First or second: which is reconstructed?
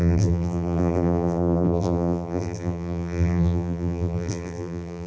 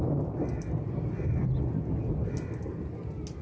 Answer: first